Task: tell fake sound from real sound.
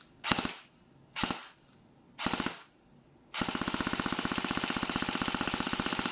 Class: real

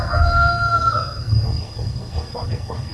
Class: fake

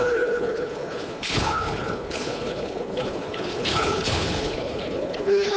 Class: fake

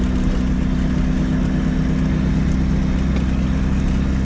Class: real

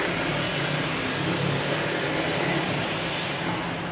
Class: real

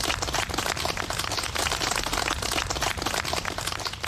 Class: real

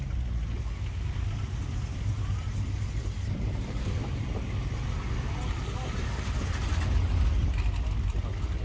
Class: real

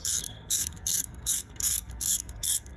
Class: fake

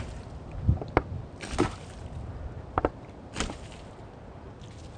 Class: real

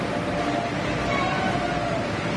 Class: real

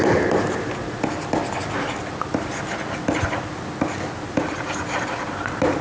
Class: real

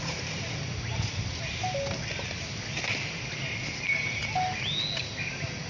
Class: real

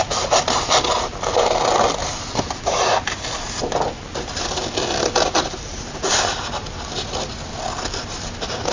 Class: real